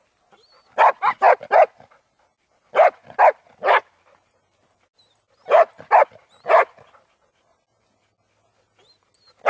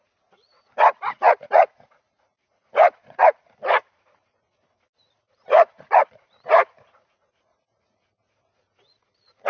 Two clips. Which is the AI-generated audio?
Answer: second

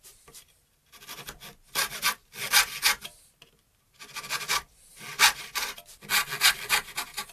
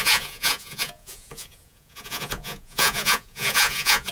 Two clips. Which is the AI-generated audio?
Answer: second